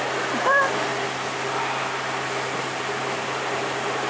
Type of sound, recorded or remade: recorded